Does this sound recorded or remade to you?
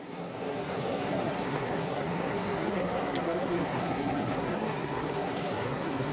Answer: remade